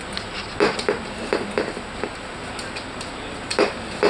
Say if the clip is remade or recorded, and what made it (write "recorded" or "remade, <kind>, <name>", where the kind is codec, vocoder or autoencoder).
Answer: recorded